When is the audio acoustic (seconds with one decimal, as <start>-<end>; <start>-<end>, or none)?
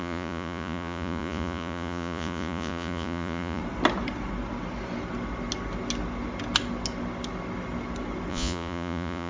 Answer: 3.6-8.3